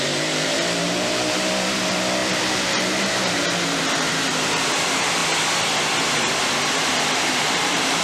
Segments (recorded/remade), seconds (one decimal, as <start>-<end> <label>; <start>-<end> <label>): 0.0-5.2 remade; 5.2-6.4 recorded; 6.4-8.0 remade

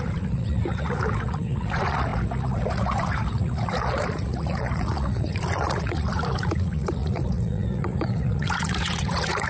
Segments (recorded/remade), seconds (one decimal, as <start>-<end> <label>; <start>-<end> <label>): 0.0-9.5 remade

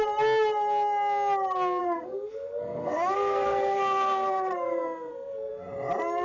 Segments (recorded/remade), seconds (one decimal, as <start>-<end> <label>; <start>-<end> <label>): 0.0-1.8 recorded; 1.8-5.5 remade; 5.5-6.2 recorded

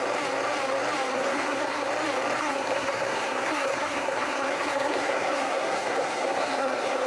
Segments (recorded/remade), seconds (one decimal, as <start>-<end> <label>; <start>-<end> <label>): 0.0-1.1 recorded; 1.1-1.9 remade; 1.9-2.4 recorded; 2.4-7.1 remade

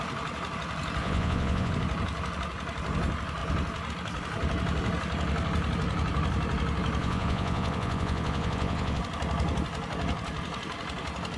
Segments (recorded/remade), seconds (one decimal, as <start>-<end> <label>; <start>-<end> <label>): 0.0-1.0 recorded; 1.0-1.7 remade; 1.7-7.0 recorded; 7.0-9.0 remade; 9.0-11.4 recorded

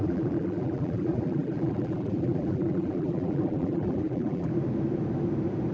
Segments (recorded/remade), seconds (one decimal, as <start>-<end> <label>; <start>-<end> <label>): 0.0-4.5 remade; 4.5-5.7 recorded

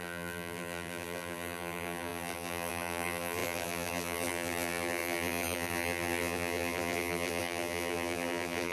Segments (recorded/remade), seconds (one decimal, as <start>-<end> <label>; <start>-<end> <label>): 0.0-8.7 remade